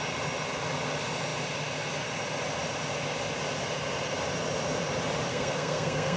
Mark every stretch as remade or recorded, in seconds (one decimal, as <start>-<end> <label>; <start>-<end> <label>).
0.0-5.3 recorded; 5.3-6.2 remade